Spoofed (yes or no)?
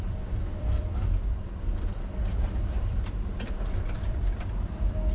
yes